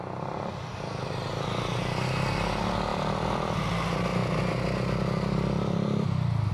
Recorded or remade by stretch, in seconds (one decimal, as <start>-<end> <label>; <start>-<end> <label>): 0.0-2.9 recorded; 2.9-3.6 remade; 3.6-6.5 recorded